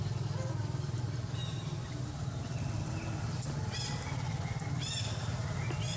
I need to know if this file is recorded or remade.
recorded